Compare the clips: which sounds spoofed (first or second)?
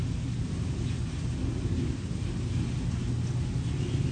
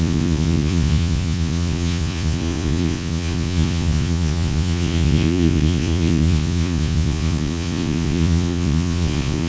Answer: second